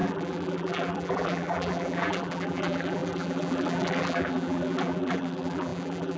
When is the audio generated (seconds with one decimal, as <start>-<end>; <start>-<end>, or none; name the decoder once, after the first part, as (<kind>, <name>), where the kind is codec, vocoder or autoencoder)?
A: 0.0-6.2 (vocoder, BigVGAN v2)